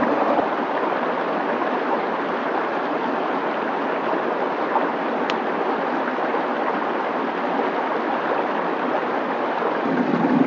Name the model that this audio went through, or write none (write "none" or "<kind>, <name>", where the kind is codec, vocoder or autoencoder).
none